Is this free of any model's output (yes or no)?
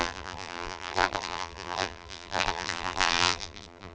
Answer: no